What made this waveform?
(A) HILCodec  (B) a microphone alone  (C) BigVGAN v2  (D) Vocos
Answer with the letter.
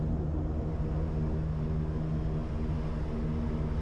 B